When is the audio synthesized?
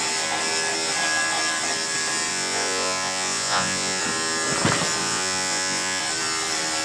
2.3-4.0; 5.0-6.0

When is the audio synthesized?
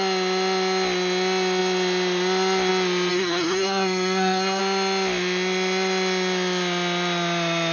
3.1-4.6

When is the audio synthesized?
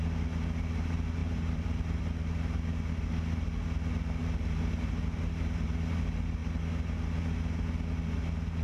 1.2-2.0; 4.2-5.2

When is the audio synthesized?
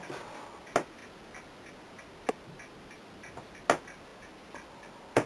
none